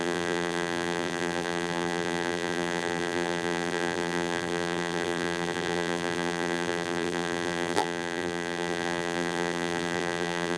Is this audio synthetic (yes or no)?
yes